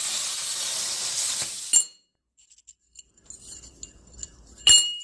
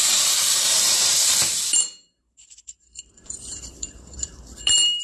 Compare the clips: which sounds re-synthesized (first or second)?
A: second